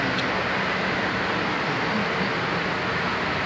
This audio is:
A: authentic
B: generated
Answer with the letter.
A